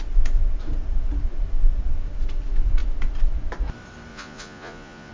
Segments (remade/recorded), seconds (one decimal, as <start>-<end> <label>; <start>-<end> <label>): 0.0-4.1 recorded; 4.1-5.1 remade